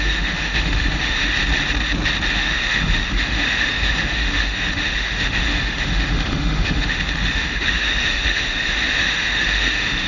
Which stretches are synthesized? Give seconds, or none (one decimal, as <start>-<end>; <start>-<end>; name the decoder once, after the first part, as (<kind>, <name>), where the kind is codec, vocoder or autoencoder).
0.0-1.4 (autoencoder, DAC-VAE); 2.3-10.1